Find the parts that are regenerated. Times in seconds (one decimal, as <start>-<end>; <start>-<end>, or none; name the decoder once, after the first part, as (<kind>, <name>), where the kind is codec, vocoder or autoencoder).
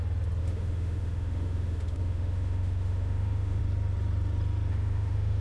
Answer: 0.4-3.6 (autoencoder, DAC-VAE); 4.7-5.4